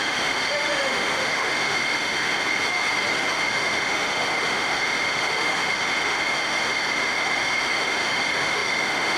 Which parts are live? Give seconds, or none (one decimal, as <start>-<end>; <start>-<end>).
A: 2.4-3.3